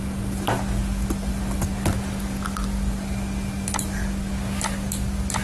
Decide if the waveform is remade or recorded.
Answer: recorded